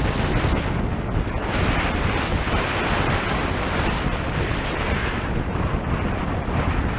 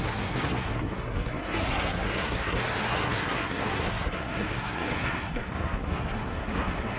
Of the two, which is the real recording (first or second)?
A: first